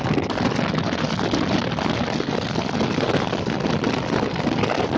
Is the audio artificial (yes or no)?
no